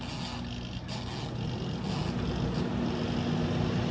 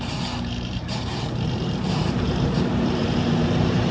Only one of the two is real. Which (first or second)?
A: first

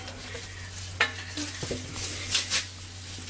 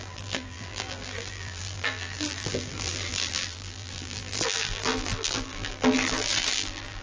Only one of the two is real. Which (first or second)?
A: first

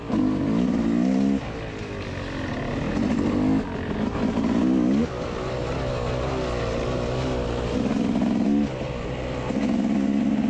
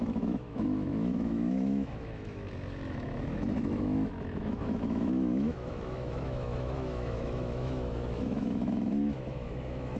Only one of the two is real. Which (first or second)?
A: first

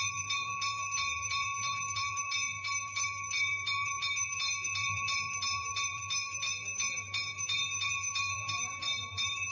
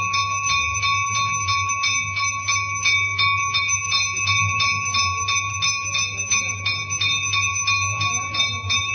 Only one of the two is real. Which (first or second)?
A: second